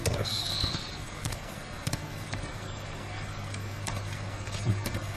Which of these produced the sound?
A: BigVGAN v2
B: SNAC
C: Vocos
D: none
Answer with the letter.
B